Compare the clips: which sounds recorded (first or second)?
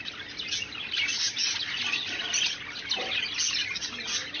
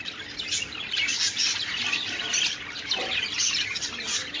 first